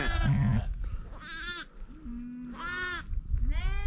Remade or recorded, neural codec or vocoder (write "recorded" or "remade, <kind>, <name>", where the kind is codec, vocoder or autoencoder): recorded